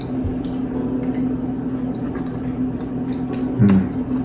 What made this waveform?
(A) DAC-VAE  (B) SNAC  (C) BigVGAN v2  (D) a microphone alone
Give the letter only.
D